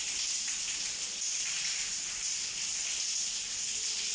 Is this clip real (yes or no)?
yes